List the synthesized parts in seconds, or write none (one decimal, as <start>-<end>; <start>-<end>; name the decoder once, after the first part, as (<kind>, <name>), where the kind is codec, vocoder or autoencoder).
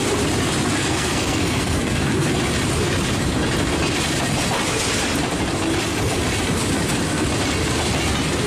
0.8-2.4 (codec, SNAC)